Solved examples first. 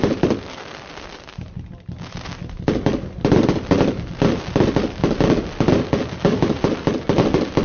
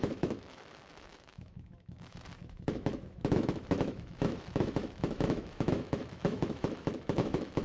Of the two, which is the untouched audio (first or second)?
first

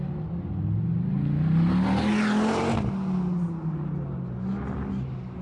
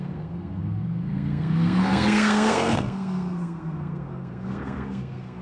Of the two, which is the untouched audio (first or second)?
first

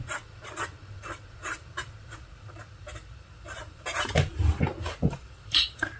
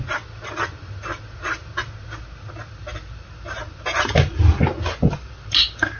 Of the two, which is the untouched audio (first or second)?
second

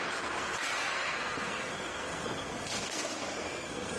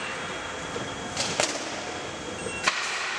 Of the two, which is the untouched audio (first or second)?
second